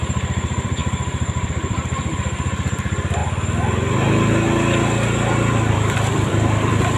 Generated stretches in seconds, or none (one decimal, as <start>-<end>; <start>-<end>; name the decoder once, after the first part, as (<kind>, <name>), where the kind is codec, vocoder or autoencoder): 0.0-3.2 (vocoder, BigVGAN v2); 5.7-7.0